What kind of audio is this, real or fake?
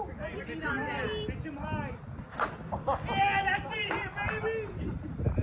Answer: real